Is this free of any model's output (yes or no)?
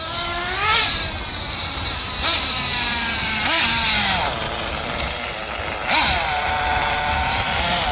yes